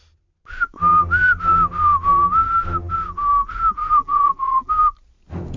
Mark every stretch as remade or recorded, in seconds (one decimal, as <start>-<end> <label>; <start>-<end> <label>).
0.0-3.8 recorded; 3.8-4.7 remade; 4.7-5.6 recorded